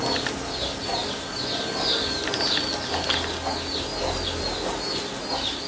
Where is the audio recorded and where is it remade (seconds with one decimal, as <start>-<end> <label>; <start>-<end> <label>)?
0.0-5.7 recorded